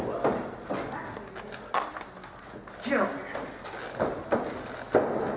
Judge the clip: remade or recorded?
recorded